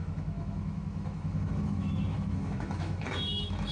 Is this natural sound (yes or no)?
no